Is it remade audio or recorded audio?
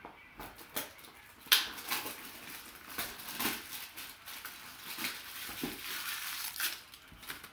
recorded